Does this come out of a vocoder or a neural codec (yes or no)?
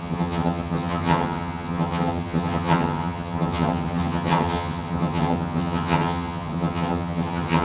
yes